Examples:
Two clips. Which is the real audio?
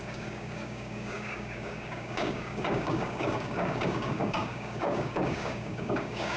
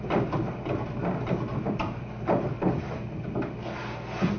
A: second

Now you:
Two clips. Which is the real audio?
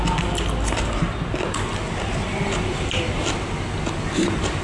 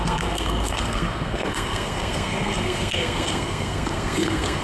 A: first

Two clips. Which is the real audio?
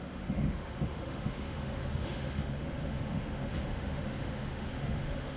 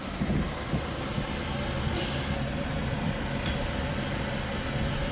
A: second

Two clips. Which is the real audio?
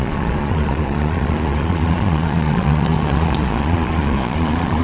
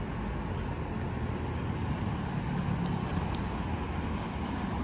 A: second